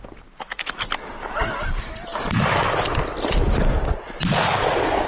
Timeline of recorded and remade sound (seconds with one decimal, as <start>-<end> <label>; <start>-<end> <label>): 0.0-5.1 recorded